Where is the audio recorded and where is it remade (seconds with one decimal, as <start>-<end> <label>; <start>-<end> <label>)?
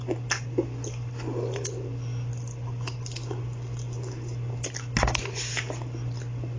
0.0-6.6 recorded